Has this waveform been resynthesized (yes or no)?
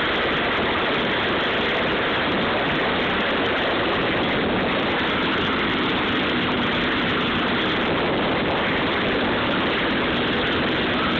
no